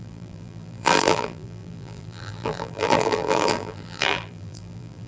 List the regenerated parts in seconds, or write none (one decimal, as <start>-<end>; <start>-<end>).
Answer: 0.0-5.1